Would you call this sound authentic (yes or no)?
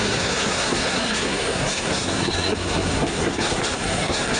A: no